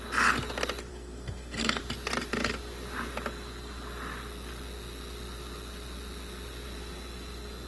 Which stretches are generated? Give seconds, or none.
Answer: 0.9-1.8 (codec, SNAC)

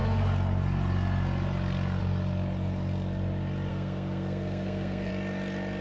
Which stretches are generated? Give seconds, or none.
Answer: 3.7-5.1 (codec, SNAC)

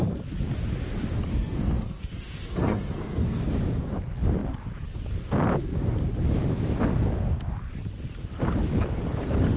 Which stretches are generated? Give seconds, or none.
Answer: 1.3-3.4 (codec, SNAC)

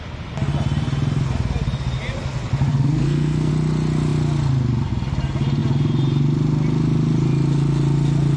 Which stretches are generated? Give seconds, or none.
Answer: 2.7-3.5 (codec, SNAC)